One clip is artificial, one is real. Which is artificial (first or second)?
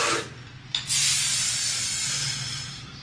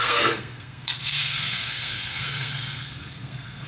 second